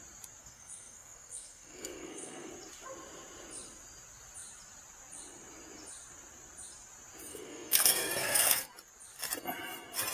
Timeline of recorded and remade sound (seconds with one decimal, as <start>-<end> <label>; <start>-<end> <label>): 0.0-0.4 recorded; 0.4-2.5 remade; 2.5-7.3 recorded; 7.3-8.7 remade; 8.7-10.1 recorded